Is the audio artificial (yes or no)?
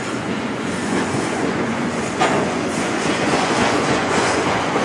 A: yes